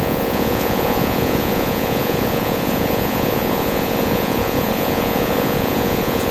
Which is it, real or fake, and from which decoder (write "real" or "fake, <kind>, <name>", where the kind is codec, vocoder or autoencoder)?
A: fake, vocoder, Vocos